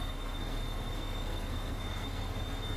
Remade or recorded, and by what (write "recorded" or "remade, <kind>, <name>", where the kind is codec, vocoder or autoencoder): remade, codec, SNAC